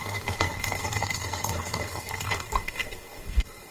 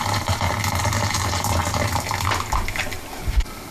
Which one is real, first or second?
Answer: second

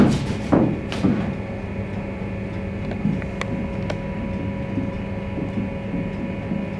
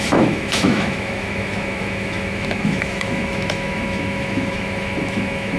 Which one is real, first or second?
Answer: first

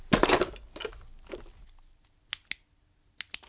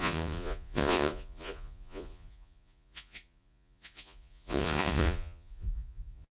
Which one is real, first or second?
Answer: first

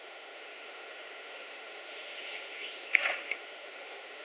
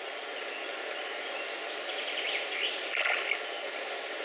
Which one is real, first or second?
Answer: second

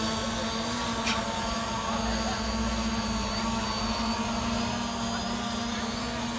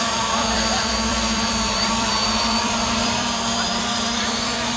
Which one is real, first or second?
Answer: first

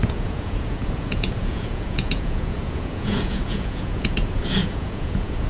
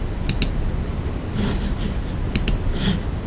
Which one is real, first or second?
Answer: second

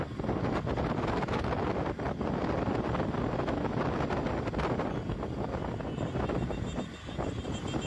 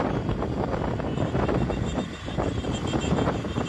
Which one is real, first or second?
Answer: first